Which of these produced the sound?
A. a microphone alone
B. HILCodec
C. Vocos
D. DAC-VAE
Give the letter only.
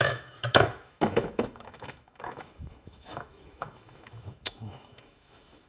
D